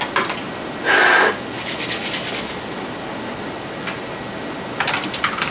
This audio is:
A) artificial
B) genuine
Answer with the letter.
B